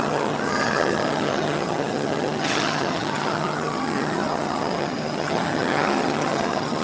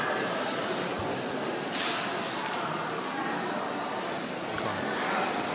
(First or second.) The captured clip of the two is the second